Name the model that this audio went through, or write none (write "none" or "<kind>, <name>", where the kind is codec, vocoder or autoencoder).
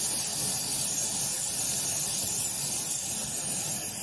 none